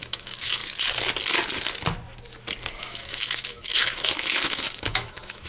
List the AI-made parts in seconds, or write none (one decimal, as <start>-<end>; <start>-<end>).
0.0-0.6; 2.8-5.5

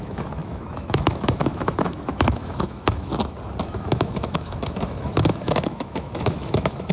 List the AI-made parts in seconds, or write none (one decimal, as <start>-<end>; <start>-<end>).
0.0-3.1; 3.6-6.9

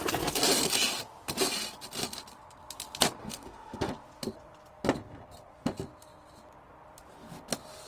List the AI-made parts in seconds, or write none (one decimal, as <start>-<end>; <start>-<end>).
3.2-3.9